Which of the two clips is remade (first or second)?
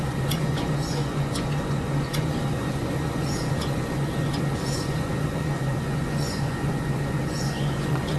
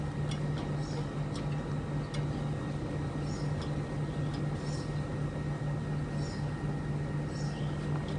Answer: first